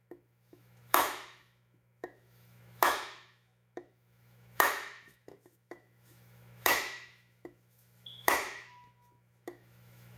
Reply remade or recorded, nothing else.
remade